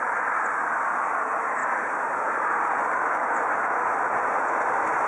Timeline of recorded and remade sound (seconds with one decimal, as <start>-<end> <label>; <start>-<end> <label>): 0.0-5.1 recorded